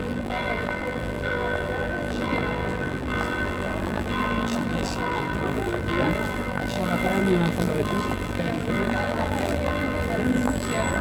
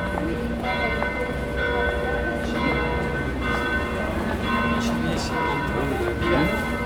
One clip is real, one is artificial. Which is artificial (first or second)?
first